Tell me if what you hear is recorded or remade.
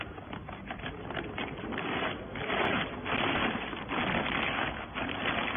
recorded